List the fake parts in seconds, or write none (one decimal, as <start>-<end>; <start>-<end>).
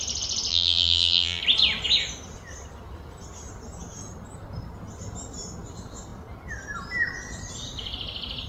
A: 0.5-1.4